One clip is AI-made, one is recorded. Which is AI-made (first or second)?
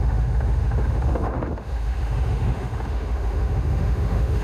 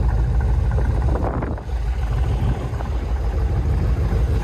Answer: first